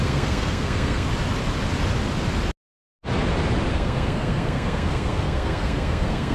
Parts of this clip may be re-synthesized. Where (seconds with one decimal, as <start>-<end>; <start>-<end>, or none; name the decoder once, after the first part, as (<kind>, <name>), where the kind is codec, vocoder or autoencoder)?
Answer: 0.0-1.1 (codec, SNAC); 3.7-6.3